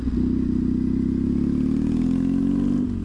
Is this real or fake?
real